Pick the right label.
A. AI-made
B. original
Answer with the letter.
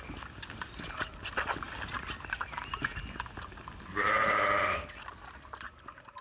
B